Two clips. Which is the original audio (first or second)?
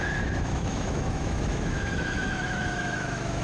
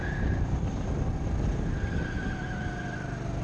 second